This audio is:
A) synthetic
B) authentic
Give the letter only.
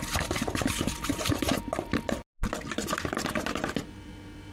B